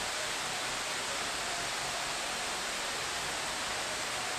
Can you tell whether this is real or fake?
real